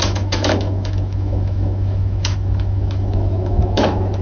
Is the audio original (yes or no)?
no